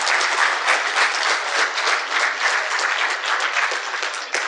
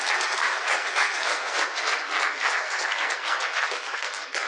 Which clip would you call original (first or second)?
first